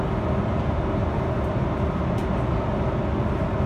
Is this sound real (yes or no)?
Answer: yes